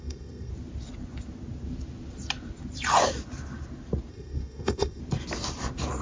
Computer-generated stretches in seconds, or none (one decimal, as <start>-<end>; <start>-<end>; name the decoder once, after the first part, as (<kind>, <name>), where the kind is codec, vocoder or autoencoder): 0.0-0.5 (codec, SNAC); 4.1-5.0